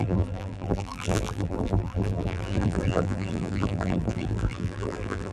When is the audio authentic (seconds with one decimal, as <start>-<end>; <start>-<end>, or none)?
none